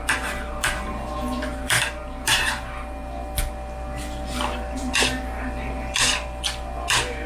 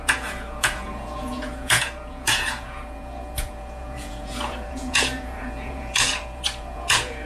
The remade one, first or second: second